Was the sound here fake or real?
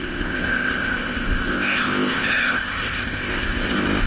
fake